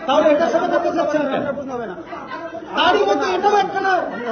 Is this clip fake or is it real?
fake